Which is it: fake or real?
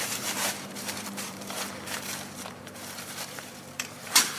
fake